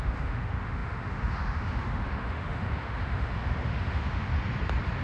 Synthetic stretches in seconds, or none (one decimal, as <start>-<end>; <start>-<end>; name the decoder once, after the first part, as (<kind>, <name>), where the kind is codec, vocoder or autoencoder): 0.0-4.3 (autoencoder, DAC-VAE)